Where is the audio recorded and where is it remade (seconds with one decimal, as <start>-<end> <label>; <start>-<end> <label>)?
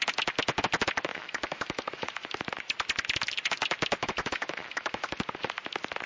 0.0-1.1 recorded; 1.1-2.4 remade; 2.4-4.0 recorded; 4.0-5.2 remade; 5.2-6.1 recorded